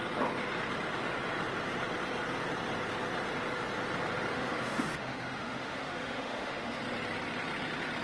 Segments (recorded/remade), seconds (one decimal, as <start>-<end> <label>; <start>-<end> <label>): 0.0-4.3 recorded; 4.3-6.8 remade; 6.8-8.0 recorded